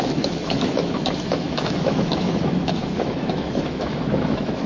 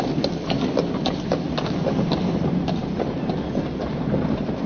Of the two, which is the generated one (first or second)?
first